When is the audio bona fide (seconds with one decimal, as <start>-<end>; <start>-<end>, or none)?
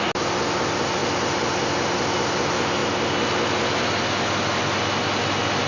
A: 0.0-5.7